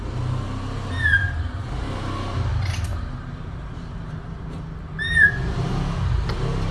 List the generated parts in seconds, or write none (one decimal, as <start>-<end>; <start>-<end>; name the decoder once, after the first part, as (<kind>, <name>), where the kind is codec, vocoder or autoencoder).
2.9-5.7 (vocoder, BigVGAN v2)